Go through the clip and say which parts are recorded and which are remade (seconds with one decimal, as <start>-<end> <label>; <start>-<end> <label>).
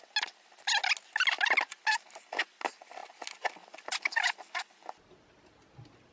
0.0-6.1 recorded